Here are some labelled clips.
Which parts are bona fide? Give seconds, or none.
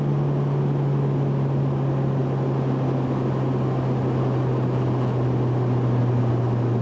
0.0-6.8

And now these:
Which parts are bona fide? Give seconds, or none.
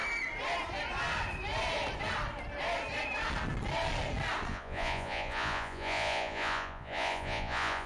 0.0-4.5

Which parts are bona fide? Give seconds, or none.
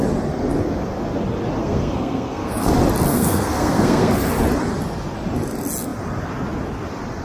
0.0-1.6; 2.7-3.1; 4.1-7.2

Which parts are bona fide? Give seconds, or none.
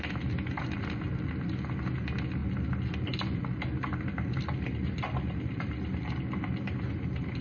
0.0-7.4